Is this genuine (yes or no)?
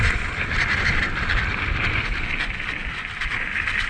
yes